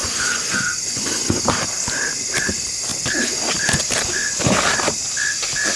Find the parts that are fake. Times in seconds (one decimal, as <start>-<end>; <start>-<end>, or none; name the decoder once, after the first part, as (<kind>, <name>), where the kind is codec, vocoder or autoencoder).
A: 0.0-1.4 (vocoder, Vocos)

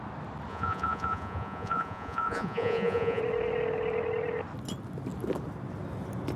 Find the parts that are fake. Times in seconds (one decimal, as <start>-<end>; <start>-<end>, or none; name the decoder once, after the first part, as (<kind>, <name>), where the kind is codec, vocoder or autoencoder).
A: 0.5-3.2 (vocoder, Vocos)

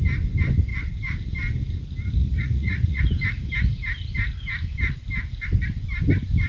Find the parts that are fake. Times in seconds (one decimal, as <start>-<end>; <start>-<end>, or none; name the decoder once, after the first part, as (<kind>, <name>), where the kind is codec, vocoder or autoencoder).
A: 2.2-3.0 (vocoder, Vocos)

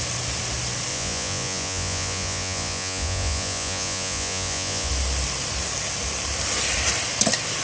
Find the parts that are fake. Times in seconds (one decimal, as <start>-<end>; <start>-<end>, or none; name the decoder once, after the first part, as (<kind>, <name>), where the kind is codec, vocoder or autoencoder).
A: 0.9-4.9 (vocoder, Vocos)

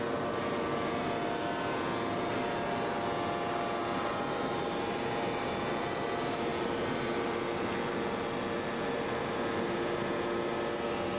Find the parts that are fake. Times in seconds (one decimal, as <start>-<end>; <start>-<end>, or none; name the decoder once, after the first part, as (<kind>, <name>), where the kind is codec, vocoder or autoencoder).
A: none

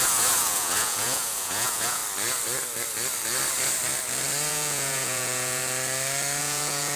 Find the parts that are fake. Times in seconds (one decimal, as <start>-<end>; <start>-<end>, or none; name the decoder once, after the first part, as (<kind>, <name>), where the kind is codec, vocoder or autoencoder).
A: 0.0-2.0 (vocoder, Vocos); 4.5-5.6; 6.4-7.0

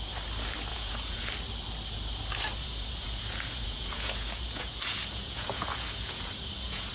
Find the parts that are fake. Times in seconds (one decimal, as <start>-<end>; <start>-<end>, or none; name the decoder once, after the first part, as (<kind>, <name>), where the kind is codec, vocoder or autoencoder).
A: 0.7-1.3 (vocoder, Vocos); 2.6-6.9

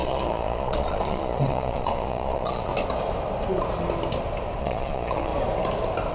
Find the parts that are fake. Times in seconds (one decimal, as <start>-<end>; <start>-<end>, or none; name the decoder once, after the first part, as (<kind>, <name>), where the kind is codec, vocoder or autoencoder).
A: 0.0-2.7 (vocoder, Vocos); 4.6-5.3